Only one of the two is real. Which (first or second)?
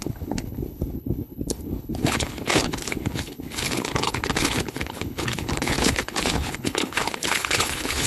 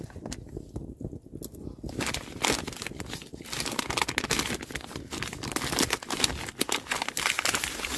second